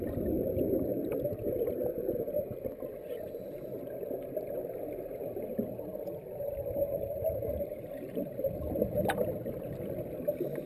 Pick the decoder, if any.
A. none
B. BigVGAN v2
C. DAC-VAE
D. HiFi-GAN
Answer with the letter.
A